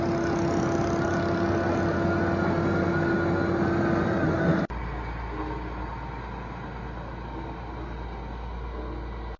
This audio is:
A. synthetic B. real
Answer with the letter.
B